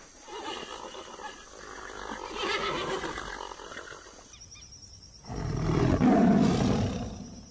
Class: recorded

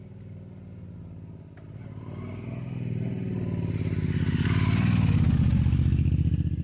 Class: recorded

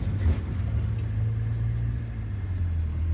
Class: recorded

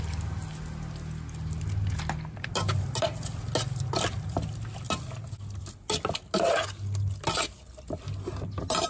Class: recorded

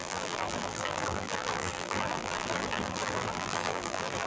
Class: remade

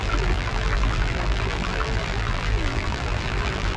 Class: remade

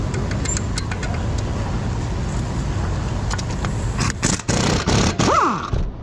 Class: recorded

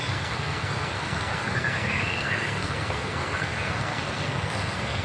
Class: remade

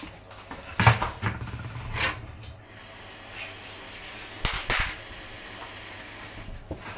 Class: recorded